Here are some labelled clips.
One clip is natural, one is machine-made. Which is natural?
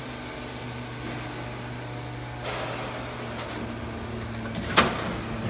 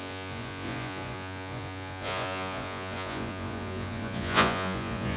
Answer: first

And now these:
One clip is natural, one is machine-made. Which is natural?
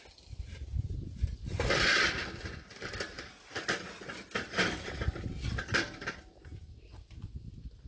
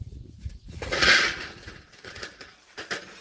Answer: first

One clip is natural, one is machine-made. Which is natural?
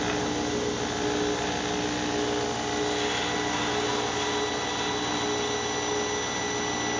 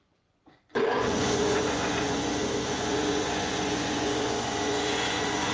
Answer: first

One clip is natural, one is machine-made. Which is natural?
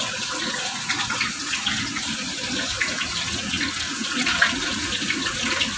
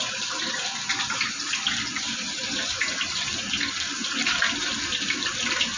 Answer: second